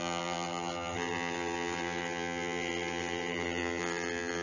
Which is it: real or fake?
fake